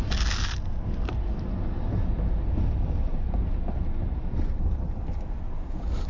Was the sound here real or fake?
real